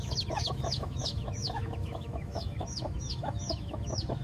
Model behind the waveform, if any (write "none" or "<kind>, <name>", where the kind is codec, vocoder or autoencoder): autoencoder, DAC-VAE